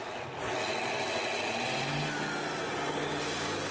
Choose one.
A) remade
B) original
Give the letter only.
B